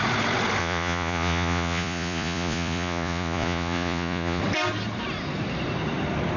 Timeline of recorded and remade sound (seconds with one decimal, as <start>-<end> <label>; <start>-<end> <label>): 0.0-0.6 recorded; 0.6-4.4 remade; 4.4-6.4 recorded